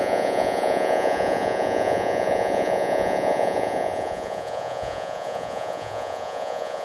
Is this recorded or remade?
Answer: remade